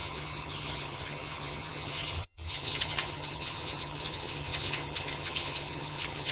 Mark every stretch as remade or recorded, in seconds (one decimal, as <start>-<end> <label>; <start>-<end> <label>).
0.0-6.3 remade